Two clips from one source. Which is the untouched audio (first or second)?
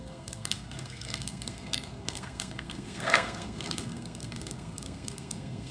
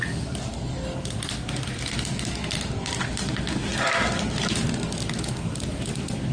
second